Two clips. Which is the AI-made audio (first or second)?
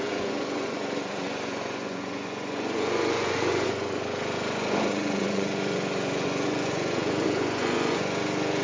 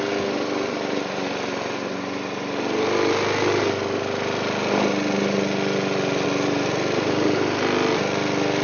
first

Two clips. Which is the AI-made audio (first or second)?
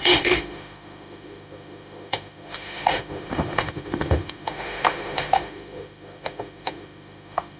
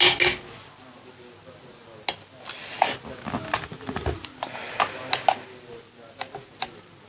first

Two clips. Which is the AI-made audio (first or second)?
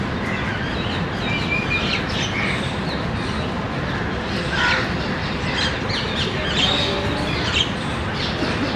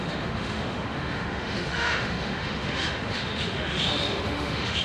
second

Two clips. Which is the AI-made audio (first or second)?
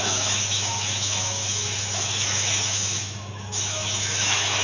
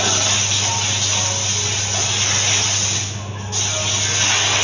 first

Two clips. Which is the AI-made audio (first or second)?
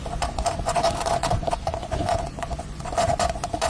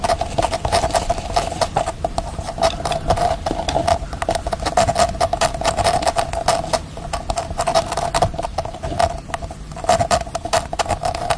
first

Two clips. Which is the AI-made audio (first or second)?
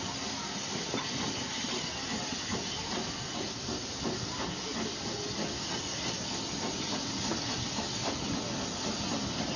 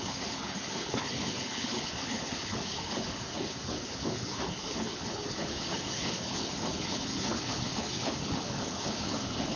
second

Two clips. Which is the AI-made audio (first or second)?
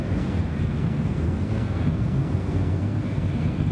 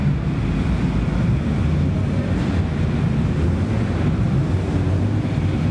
first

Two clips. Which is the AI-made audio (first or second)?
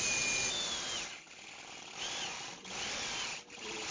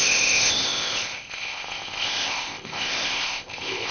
second